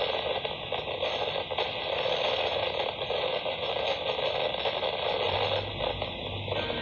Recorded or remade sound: recorded